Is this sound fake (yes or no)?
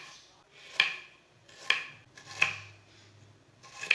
no